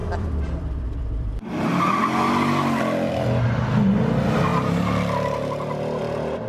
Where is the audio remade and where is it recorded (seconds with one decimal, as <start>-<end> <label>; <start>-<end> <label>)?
0.0-2.0 remade; 2.0-6.5 recorded